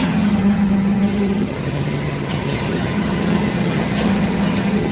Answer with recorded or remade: remade